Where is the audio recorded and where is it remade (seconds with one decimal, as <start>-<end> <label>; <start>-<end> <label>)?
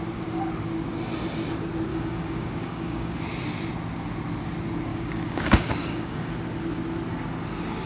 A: 0.0-1.9 recorded; 1.9-3.2 remade; 3.2-4.9 recorded; 4.9-6.3 remade; 6.3-7.9 recorded